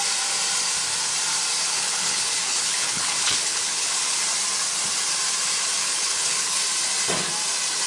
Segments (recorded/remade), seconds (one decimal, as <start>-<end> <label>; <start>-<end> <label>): 0.0-1.7 recorded; 1.7-4.2 remade; 4.2-5.8 recorded; 5.8-6.6 remade; 6.6-7.9 recorded